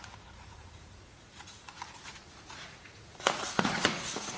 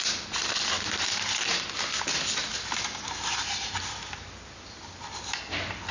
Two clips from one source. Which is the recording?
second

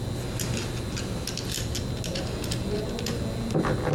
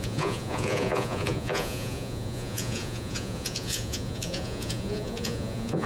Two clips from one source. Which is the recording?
first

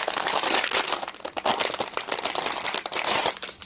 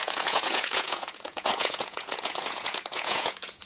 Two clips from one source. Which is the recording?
first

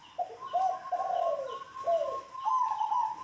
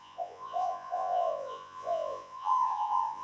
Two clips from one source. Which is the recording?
first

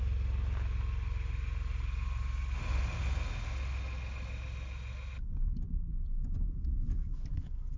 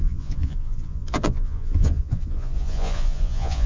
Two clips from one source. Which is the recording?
first